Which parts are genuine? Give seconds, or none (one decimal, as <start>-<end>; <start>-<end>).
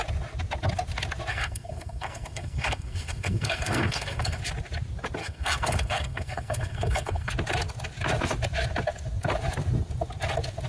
0.0-1.3; 4.4-5.2; 7.3-10.7